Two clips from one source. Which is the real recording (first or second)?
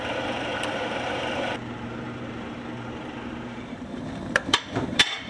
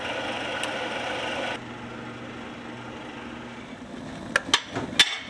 second